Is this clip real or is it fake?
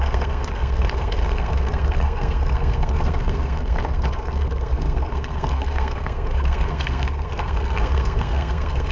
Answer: fake